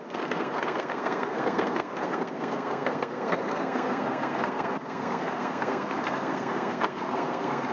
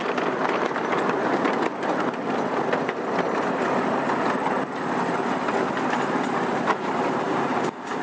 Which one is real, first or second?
second